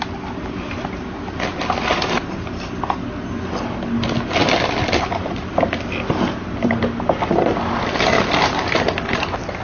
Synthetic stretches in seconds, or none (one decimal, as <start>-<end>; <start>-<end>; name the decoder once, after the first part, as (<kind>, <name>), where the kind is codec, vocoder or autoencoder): none